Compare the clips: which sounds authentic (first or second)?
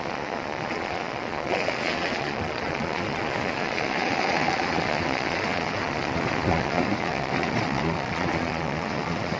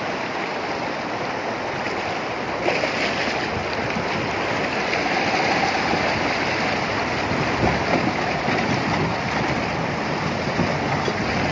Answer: second